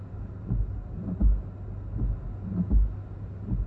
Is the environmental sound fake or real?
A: real